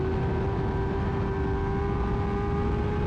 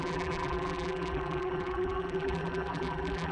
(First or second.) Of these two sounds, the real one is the first